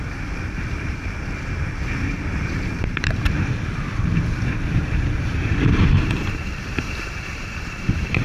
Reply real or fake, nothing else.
fake